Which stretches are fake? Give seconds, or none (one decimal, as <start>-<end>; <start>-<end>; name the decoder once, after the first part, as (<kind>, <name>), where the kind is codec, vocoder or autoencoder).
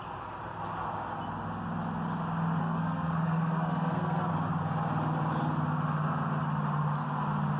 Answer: 2.6-4.3 (codec, SNAC)